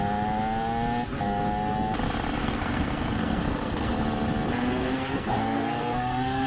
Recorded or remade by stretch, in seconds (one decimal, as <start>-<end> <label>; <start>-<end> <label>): 0.0-2.4 recorded; 2.4-3.9 remade; 3.9-4.8 recorded; 4.8-6.5 remade